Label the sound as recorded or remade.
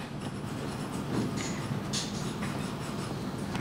recorded